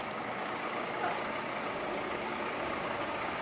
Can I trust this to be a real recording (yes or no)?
no